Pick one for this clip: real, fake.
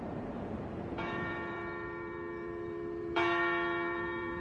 fake